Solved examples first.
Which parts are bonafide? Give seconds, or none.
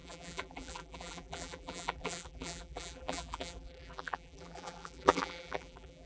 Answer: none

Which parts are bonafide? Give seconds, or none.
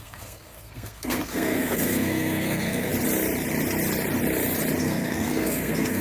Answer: 2.9-4.8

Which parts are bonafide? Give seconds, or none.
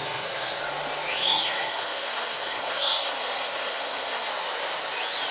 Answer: 0.6-1.1; 4.3-5.3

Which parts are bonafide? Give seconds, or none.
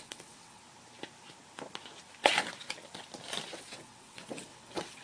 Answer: 0.6-3.6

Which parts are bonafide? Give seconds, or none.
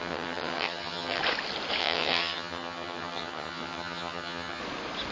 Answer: 1.2-1.8; 4.6-5.1